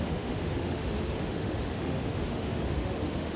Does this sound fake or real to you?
fake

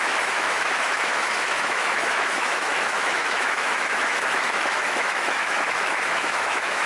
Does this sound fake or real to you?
fake